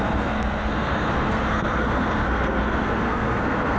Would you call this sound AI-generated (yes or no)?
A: yes